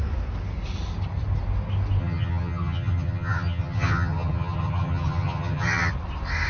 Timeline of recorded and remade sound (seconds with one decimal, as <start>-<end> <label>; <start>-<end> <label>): 0.0-2.0 recorded; 2.0-5.9 remade; 5.9-6.5 recorded